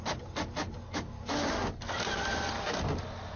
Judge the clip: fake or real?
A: real